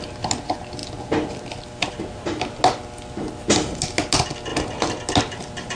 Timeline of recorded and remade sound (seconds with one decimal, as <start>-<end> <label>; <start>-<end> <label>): 0.0-5.8 recorded